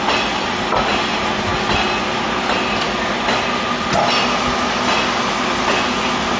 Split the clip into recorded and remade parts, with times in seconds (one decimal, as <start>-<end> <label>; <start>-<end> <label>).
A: 0.0-6.4 recorded